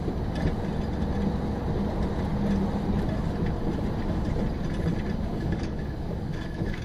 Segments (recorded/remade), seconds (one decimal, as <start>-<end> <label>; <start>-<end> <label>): 0.0-5.3 recorded; 5.3-6.8 remade